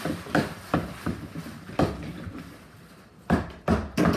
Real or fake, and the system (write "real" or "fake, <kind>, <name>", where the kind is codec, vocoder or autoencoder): real